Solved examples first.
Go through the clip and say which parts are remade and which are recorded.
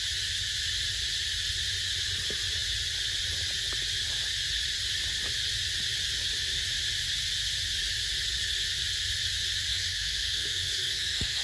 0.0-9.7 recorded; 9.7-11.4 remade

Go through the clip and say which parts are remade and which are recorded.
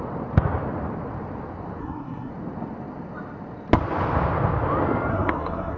0.0-1.8 recorded; 1.8-2.3 remade; 2.3-5.1 recorded; 5.1-5.8 remade